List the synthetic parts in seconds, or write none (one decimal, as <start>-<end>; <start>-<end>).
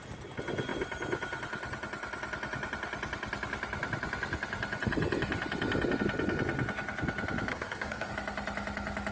7.5-8.1